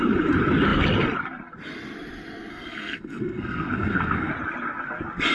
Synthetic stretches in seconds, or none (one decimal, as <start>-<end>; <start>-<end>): 2.5-4.3